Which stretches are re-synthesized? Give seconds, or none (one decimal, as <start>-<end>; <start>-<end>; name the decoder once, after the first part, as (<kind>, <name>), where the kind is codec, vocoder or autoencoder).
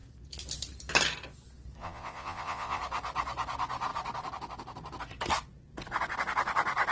1.8-2.8 (vocoder, Vocos)